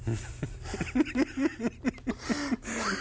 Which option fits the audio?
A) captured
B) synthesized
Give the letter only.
A